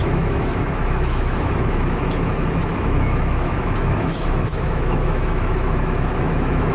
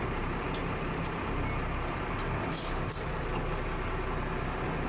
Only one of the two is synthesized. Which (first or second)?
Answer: first